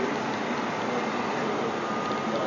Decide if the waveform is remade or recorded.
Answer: recorded